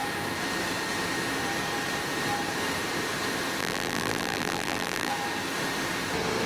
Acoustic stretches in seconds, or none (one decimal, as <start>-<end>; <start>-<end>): 0.0-3.6; 5.1-6.5